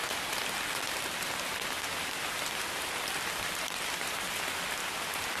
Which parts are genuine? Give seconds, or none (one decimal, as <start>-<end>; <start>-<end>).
0.0-4.8